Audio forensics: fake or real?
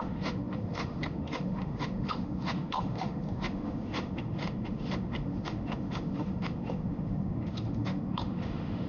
fake